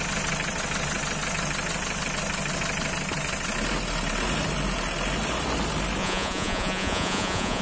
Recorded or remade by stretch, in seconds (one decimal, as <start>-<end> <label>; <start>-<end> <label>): 0.0-6.0 recorded; 6.0-7.6 remade